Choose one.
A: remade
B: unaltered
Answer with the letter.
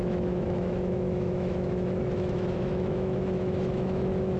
A